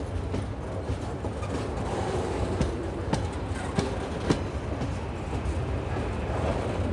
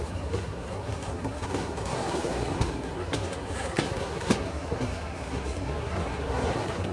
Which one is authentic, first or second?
first